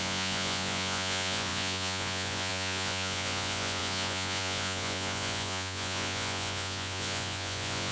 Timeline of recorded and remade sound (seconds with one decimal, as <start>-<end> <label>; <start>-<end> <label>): 0.0-7.9 remade